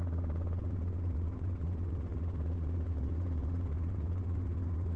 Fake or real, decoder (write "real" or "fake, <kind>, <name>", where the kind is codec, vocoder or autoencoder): fake, vocoder, WaveNeXt